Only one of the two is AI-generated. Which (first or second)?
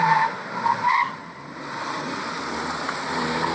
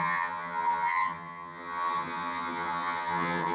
second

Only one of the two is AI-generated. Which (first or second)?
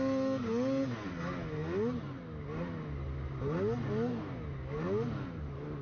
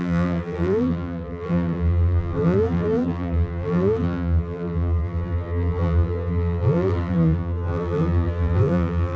second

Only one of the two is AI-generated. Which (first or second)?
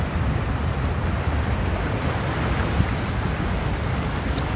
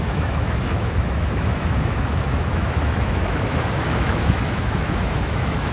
second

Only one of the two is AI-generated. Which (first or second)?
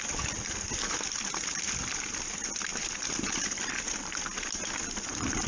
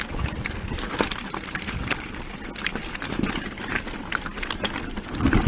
second